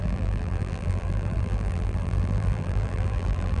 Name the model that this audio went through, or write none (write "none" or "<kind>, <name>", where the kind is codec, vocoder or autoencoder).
vocoder, BigVGAN v2